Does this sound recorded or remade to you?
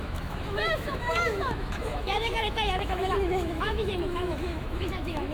remade